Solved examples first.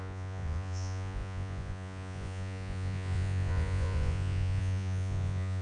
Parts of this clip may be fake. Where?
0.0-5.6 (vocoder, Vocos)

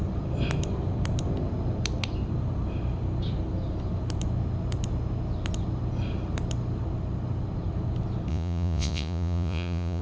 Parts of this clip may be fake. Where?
8.3-10.0 (vocoder, Vocos)

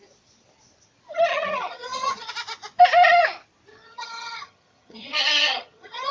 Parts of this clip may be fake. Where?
1.3-2.3 (vocoder, HiFi-GAN); 3.7-6.1

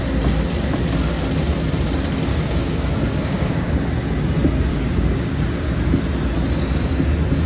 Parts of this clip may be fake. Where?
2.3-3.7 (codec, DAC); 4.7-5.8

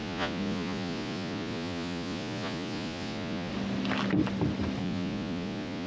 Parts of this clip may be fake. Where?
0.0-3.5 (vocoder, Vocos); 4.8-5.9